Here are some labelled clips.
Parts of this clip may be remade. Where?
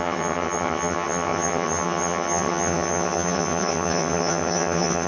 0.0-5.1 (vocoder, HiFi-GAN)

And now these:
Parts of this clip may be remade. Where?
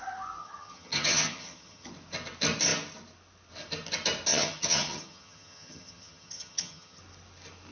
0.4-1.9 (vocoder, HiFi-GAN); 4.3-7.0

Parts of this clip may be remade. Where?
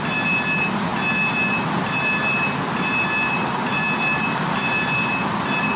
none